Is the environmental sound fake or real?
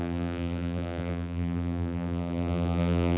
fake